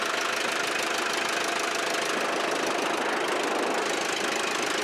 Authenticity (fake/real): real